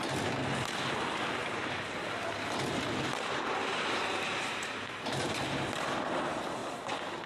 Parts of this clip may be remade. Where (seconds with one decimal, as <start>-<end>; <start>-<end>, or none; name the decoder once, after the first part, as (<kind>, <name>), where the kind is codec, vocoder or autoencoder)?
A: 1.4-2.6 (vocoder, BigVGAN v2)